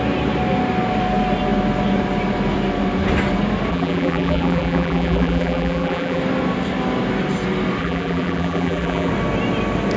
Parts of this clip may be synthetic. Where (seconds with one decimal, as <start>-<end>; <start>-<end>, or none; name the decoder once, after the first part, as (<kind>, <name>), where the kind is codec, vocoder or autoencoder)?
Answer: 3.7-6.2 (vocoder, BigVGAN v2); 7.8-9.1